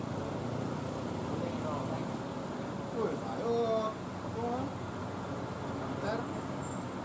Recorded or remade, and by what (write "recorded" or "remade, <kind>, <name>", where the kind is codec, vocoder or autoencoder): recorded